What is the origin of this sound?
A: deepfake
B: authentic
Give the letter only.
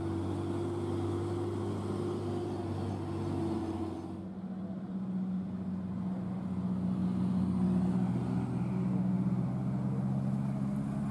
B